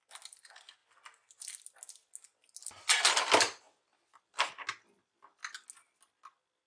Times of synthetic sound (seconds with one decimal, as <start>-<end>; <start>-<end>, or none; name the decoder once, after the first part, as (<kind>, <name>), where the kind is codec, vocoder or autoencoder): none